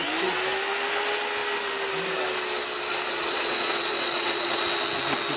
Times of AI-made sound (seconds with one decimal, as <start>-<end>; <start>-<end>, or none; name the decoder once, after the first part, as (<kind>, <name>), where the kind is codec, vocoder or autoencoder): 3.1-4.6 (vocoder, Vocos)